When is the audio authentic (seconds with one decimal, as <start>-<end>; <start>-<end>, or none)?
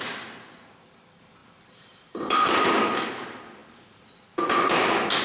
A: 0.0-5.2